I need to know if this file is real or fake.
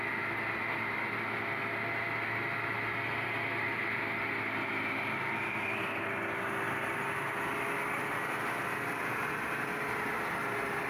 real